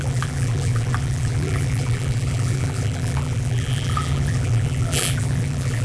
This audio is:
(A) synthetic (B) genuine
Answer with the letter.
A